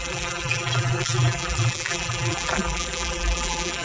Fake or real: fake